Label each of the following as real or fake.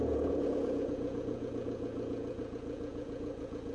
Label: fake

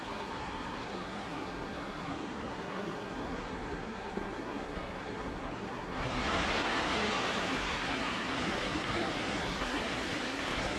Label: fake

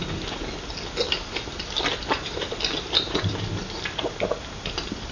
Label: real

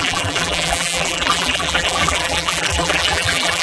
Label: fake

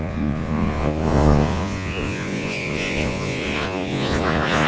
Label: fake